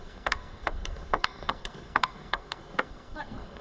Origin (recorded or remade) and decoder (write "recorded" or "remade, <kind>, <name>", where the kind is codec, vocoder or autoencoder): remade, codec, SNAC